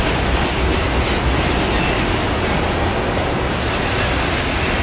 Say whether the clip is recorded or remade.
recorded